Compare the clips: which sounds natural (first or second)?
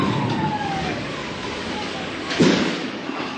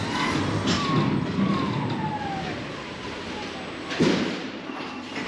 second